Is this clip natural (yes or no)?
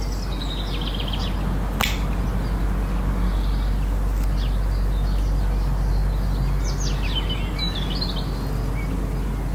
yes